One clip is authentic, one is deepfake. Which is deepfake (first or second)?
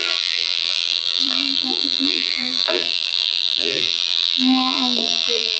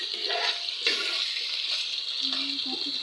first